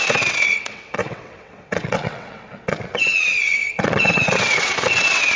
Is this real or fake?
fake